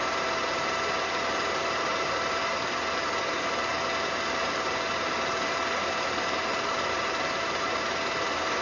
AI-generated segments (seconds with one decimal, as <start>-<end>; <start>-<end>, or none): 0.0-3.7; 4.3-8.6